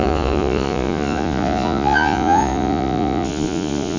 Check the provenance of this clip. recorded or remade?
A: remade